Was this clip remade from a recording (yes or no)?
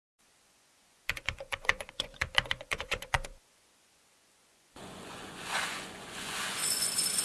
yes